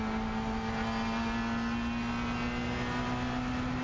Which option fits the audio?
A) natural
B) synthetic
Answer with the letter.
A